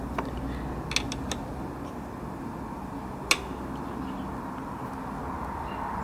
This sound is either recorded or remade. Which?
recorded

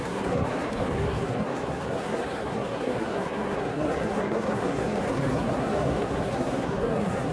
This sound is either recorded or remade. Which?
remade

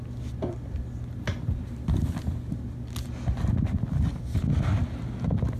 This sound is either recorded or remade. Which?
recorded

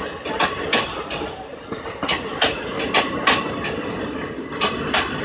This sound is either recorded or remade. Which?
recorded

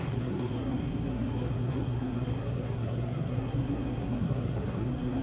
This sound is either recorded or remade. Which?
remade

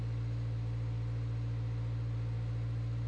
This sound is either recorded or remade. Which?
recorded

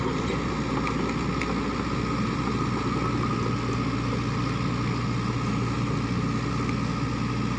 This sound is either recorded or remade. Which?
recorded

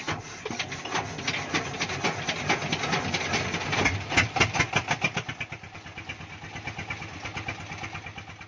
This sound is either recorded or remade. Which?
recorded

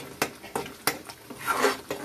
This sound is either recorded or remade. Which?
recorded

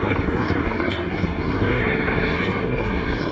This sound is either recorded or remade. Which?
remade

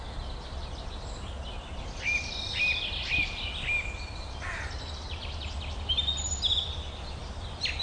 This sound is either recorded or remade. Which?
recorded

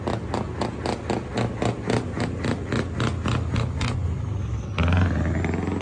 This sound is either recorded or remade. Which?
recorded